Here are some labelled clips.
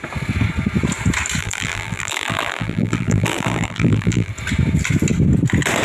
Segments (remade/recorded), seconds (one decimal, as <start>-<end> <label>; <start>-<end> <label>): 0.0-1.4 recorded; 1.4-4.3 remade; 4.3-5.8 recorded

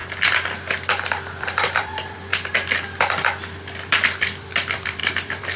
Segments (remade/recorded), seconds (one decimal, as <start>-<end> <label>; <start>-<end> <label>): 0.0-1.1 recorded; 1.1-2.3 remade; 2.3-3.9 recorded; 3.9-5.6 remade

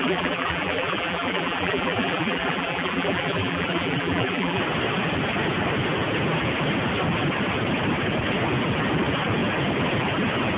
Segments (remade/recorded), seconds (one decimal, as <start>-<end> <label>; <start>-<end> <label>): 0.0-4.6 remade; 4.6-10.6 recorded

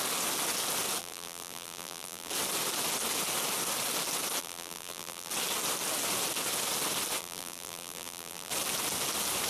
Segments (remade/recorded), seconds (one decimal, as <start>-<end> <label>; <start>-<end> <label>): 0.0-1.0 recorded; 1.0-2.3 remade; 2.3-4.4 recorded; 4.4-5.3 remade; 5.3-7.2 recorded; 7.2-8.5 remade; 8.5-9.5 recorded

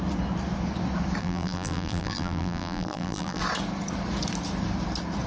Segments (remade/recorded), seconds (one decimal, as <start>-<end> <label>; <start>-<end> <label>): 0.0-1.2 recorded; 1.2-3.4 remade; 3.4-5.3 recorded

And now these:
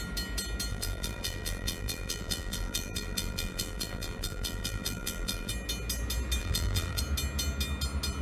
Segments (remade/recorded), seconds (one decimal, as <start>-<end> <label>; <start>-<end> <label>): 0.0-0.7 recorded; 0.7-5.5 remade; 5.5-6.4 recorded; 6.4-7.0 remade; 7.0-8.2 recorded